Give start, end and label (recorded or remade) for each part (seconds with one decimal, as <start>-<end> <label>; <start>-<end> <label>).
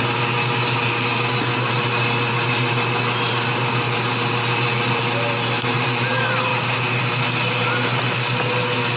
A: 0.0-9.0 recorded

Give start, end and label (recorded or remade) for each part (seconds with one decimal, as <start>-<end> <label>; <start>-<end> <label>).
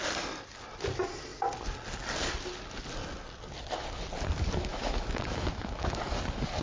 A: 0.0-4.7 recorded; 4.7-6.0 remade; 6.0-6.6 recorded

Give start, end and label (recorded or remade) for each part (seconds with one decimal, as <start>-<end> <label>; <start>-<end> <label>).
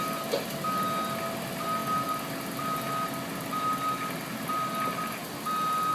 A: 0.0-5.9 recorded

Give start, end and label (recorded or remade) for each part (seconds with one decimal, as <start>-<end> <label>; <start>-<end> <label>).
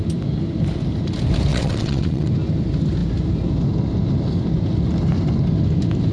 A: 0.0-1.5 recorded; 1.5-2.3 remade; 2.3-6.1 recorded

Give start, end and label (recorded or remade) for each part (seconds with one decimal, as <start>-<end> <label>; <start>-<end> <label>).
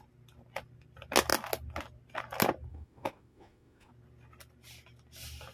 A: 0.0-2.7 recorded; 2.7-3.9 remade; 3.9-5.5 recorded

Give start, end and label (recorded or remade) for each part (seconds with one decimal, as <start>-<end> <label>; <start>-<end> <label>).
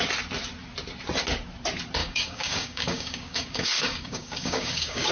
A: 0.0-2.0 recorded; 2.0-5.1 remade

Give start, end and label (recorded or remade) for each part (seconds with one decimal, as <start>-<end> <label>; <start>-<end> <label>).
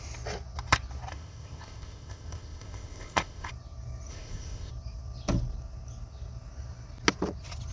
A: 0.0-1.1 recorded; 1.1-3.5 remade; 3.5-4.1 recorded; 4.1-4.7 remade; 4.7-7.7 recorded